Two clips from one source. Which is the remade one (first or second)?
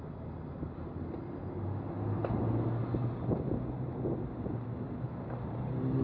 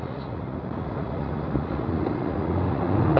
second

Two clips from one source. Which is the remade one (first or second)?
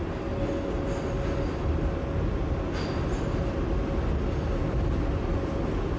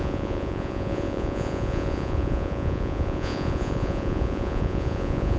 second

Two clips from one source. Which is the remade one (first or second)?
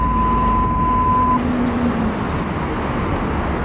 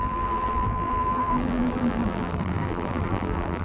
second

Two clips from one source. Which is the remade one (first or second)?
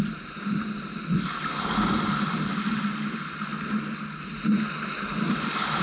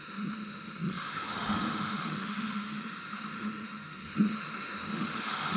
second